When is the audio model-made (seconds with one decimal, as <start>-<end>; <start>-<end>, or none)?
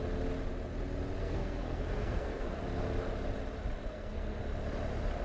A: 1.2-2.6; 3.8-4.4